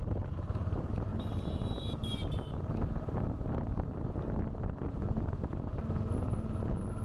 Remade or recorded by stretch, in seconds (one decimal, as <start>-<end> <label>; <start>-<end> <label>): 0.0-7.0 recorded

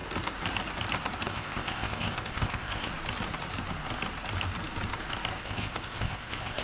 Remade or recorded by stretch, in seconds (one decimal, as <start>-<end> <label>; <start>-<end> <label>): 0.0-1.2 recorded; 1.2-2.9 remade; 2.9-5.4 recorded; 5.4-6.6 remade

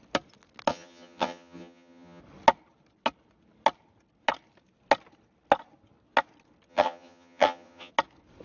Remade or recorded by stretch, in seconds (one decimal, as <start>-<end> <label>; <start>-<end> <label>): 0.0-0.7 recorded; 0.7-2.2 remade; 2.2-6.7 recorded; 6.7-7.9 remade; 7.9-8.4 recorded

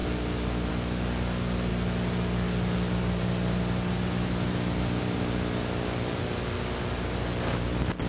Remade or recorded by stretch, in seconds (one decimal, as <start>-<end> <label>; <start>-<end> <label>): 0.0-8.1 recorded

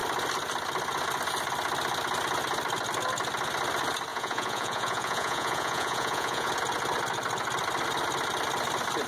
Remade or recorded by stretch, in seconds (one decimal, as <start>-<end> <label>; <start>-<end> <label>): 0.0-4.1 recorded; 4.1-6.5 remade; 6.5-9.1 recorded

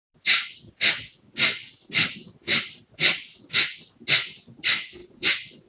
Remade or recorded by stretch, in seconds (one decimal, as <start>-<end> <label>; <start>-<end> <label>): 0.0-5.0 recorded; 5.0-5.7 remade

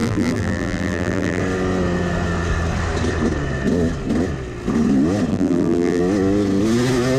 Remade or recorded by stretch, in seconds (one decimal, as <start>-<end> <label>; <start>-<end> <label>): 0.0-1.4 remade; 1.4-5.3 recorded; 5.3-6.0 remade; 6.0-7.2 recorded

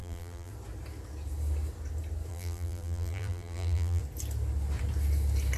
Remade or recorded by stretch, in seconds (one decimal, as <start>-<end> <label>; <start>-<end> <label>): 0.0-0.5 remade; 0.5-2.3 recorded; 2.3-4.0 remade; 4.0-5.6 recorded